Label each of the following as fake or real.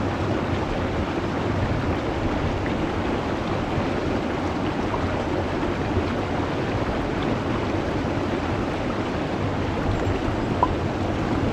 real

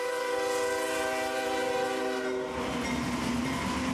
real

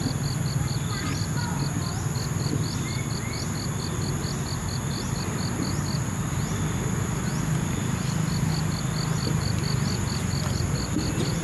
real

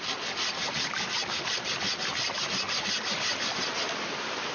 real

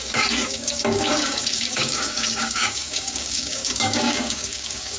fake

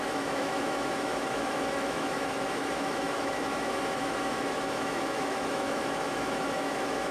fake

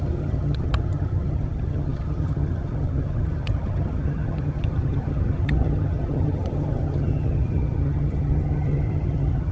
fake